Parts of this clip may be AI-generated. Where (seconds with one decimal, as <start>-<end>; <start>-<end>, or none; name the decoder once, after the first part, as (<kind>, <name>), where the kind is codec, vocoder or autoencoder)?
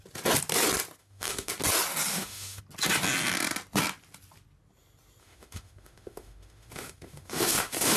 1.0-1.5 (autoencoder, DAC-VAE); 2.1-2.6; 5.2-8.0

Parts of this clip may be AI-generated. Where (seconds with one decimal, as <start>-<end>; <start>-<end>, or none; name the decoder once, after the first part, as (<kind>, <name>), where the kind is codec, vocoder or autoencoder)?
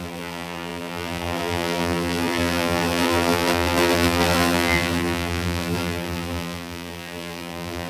0.0-7.9 (vocoder, BigVGAN v2)